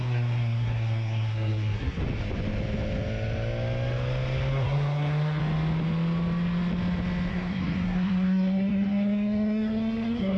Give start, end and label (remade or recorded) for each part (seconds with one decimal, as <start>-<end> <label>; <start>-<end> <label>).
0.0-2.0 remade; 2.0-4.5 recorded; 4.5-5.4 remade; 5.4-7.3 recorded; 7.3-10.4 remade